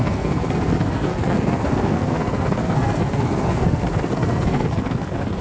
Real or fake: fake